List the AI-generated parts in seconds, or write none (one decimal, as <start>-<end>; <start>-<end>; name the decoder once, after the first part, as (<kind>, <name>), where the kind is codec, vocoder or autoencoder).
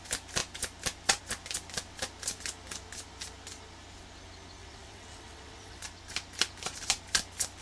4.6-5.8 (vocoder, WaveNeXt)